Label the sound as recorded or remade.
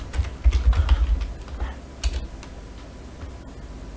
recorded